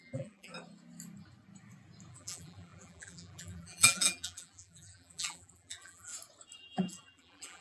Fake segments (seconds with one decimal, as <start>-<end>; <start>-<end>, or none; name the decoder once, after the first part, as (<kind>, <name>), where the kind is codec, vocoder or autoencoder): 0.0-0.5 (vocoder, BigVGAN v2); 2.1-6.1; 6.6-7.6